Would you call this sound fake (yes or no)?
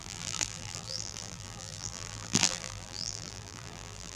yes